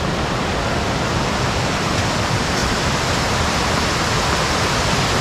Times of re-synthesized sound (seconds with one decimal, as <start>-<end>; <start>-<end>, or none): 1.1-1.9; 2.6-3.6